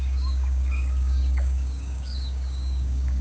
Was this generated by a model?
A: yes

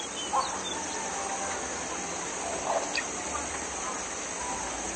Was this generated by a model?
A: no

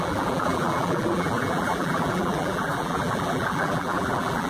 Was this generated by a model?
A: yes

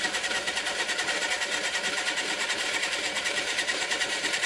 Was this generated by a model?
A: yes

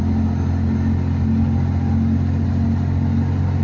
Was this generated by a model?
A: no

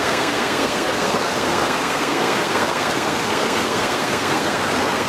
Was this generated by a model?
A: yes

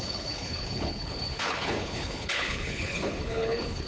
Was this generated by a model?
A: yes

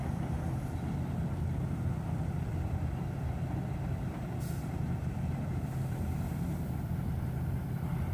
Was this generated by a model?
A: yes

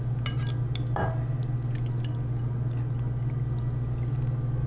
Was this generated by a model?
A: no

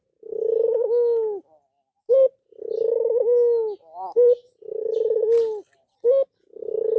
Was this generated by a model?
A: no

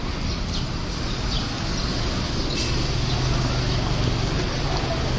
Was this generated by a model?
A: no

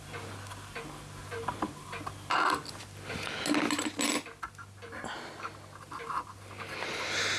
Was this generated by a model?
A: no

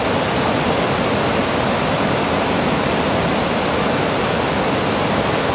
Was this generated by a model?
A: no